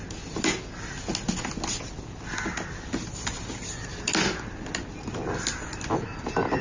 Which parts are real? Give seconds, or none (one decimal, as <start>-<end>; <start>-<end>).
0.0-6.6